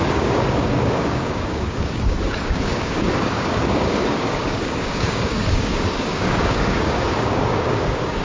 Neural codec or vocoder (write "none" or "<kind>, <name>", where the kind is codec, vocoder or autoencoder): codec, DAC